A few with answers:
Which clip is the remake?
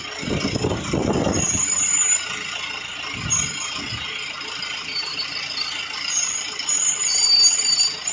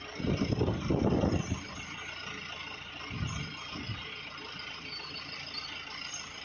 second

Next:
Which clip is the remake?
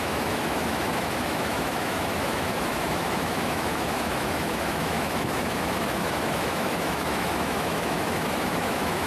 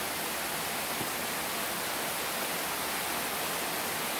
first